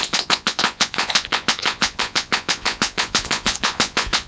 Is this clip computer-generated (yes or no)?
yes